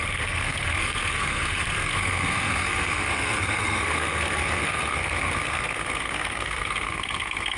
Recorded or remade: remade